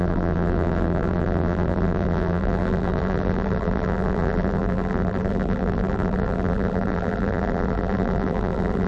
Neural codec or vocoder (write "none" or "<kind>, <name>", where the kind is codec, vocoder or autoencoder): vocoder, BigVGAN v2